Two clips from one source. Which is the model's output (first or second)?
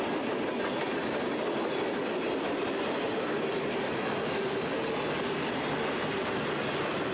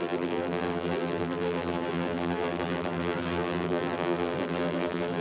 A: second